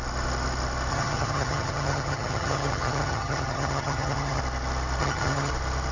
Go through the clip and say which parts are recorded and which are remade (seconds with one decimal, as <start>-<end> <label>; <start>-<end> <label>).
0.0-0.9 recorded; 0.9-4.4 remade; 4.4-5.0 recorded; 5.0-5.5 remade; 5.5-5.9 recorded